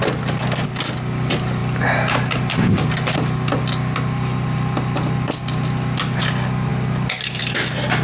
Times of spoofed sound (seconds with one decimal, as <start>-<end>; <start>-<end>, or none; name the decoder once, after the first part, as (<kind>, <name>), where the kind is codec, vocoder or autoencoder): none